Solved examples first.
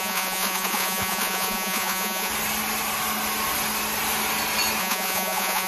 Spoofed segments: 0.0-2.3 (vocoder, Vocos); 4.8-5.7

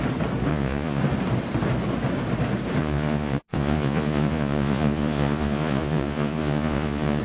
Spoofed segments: 0.5-1.0 (vocoder, Vocos); 2.8-7.2

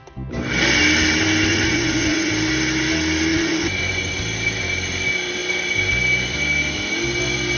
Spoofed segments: 1.5-2.3 (vocoder, Vocos); 3.3-4.1

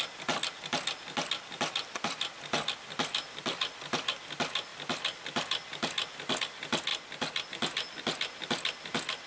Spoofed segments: none

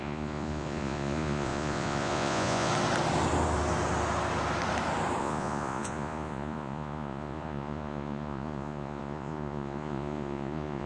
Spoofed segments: 0.0-2.7 (vocoder, Vocos); 5.2-10.9

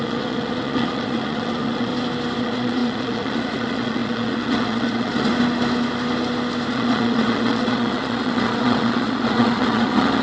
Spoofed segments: 0.0-1.9 (vocoder, Vocos); 2.4-5.3; 6.7-10.2